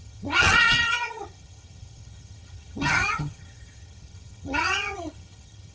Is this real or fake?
fake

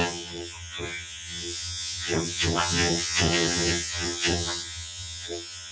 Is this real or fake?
fake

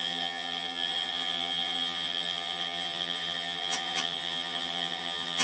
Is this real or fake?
fake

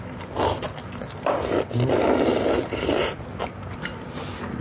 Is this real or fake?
real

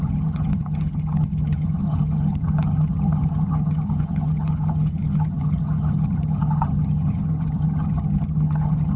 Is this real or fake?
fake